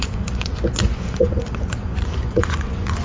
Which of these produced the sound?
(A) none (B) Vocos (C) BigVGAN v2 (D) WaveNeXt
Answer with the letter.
B